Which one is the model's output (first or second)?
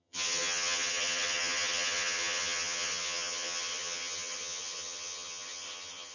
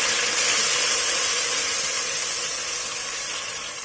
first